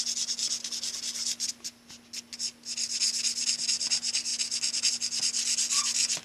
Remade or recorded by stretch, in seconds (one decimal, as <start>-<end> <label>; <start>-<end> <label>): 0.0-6.2 recorded